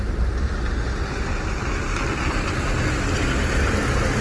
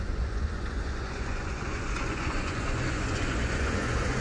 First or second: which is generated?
second